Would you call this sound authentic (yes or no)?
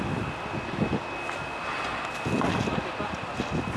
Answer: yes